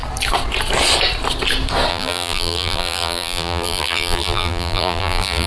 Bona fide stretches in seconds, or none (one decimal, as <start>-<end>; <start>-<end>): 0.0-1.9